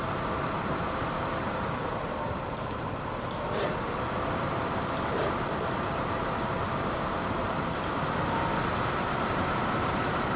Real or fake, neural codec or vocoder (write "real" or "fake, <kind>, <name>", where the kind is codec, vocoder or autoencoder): fake, vocoder, BigVGAN v2